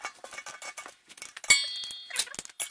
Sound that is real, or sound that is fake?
real